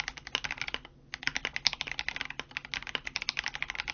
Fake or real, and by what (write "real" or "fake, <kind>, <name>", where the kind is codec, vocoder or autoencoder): real